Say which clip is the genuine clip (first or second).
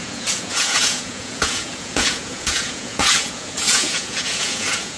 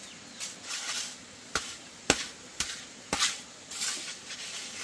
second